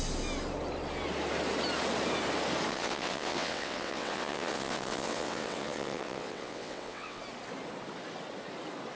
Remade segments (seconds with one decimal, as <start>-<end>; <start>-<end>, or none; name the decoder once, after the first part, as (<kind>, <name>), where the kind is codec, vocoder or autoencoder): 2.7-7.2 (vocoder, WaveNeXt)